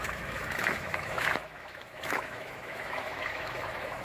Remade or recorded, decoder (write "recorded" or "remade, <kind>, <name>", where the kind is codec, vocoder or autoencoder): remade, autoencoder, DAC-VAE